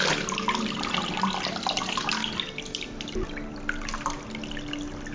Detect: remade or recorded recorded